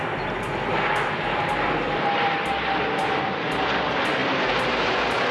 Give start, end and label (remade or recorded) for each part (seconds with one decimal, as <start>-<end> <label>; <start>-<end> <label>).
0.0-5.3 recorded